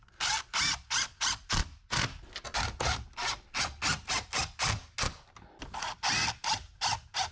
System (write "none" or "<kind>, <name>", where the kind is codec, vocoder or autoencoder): none